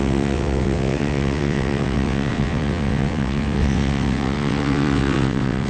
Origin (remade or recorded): remade